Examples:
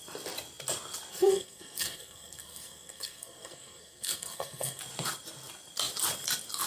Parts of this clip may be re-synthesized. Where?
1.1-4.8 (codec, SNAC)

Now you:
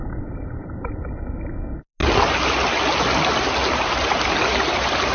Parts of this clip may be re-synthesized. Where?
0.0-0.9 (vocoder, BigVGAN v2)

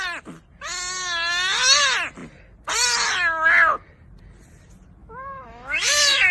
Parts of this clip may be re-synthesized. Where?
5.0-6.3 (autoencoder, DAC-VAE)

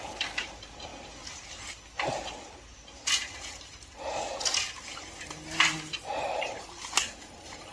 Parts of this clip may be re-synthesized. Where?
none